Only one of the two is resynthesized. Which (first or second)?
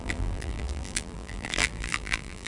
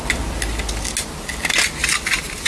first